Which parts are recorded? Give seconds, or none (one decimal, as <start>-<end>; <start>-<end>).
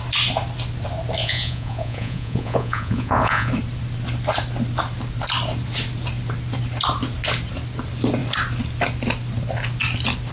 0.0-1.2; 3.5-10.3